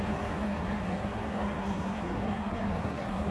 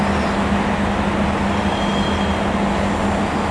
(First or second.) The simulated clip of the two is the first